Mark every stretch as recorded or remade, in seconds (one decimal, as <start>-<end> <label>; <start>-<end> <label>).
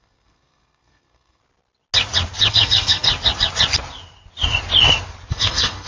0.0-1.4 remade; 1.4-2.5 recorded; 2.5-3.1 remade; 3.1-5.3 recorded; 5.3-5.9 remade